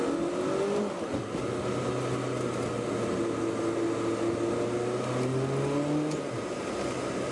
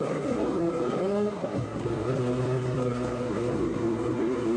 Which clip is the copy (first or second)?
second